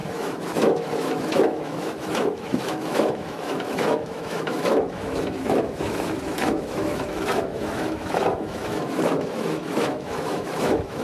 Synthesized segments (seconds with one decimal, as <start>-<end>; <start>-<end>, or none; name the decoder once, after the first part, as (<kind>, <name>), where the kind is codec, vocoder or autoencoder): 0.0-11.0 (autoencoder, DAC-VAE)